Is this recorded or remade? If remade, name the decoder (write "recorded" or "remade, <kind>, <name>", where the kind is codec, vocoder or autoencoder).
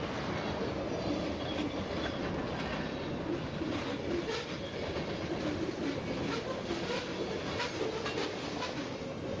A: recorded